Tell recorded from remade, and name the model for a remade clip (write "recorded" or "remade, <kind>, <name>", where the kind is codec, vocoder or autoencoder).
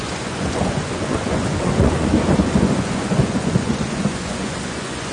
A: remade, vocoder, Vocos